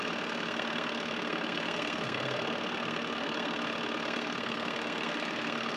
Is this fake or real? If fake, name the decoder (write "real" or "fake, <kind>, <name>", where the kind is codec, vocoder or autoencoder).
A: fake, codec, SNAC